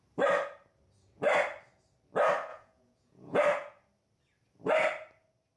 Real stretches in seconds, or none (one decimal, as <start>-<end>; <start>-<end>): 0.0-2.5; 3.4-5.6